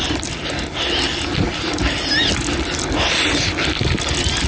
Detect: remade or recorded recorded